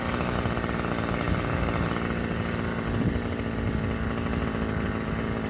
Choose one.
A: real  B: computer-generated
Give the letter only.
A